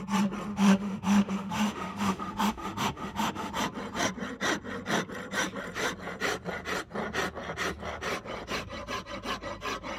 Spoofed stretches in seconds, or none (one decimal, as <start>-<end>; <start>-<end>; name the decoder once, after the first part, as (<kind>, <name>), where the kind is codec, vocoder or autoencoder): 0.5-3.5 (autoencoder, DAC-VAE)